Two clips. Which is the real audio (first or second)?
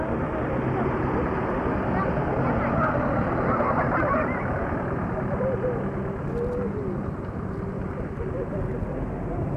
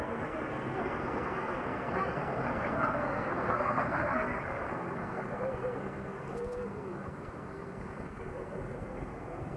first